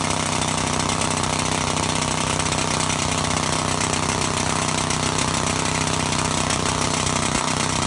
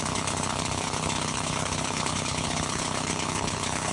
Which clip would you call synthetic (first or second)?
second